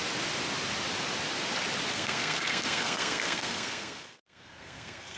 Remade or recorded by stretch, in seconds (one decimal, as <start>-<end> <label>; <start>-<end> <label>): 0.0-1.9 recorded; 1.9-5.2 remade